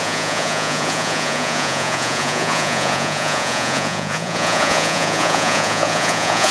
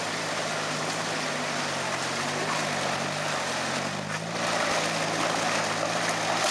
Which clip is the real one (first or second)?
second